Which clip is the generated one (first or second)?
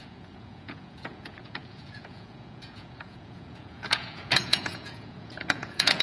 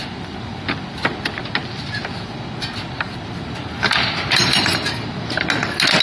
first